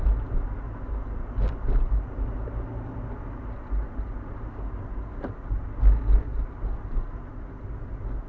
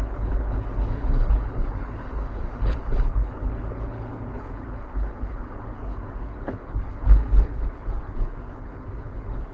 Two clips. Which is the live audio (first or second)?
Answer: first